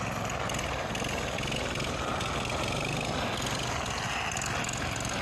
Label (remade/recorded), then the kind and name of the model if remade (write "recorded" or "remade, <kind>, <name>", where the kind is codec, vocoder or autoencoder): recorded